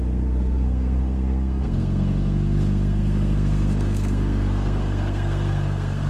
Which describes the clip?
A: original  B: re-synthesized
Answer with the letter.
B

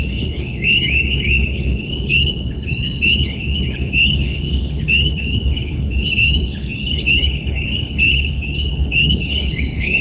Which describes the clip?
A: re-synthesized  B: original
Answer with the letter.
A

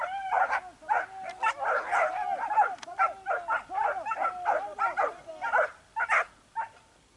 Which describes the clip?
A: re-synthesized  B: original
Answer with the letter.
B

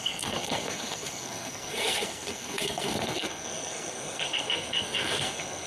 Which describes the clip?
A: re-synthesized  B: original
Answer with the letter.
A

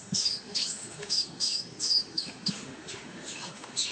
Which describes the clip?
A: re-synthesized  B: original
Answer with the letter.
A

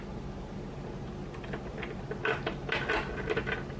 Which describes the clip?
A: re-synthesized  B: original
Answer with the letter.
B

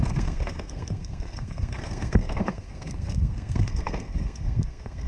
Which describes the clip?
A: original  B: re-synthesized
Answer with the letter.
B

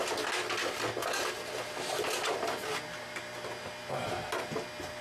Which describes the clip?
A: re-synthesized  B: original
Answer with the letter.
B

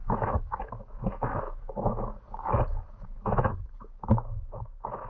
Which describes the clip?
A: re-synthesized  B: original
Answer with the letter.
A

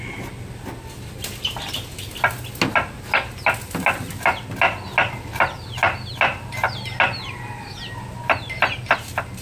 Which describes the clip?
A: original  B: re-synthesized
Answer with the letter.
A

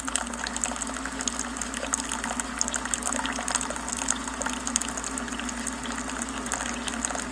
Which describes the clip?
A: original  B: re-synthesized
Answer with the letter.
A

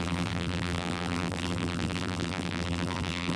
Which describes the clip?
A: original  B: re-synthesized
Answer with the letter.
B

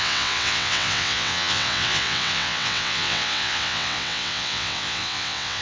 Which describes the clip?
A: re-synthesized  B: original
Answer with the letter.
A